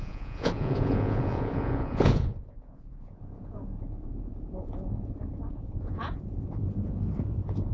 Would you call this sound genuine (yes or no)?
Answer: no